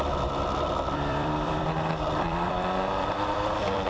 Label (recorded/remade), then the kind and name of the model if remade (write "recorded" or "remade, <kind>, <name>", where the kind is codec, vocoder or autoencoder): remade, vocoder, BigVGAN v2